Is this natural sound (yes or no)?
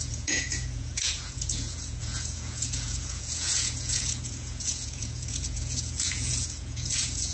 no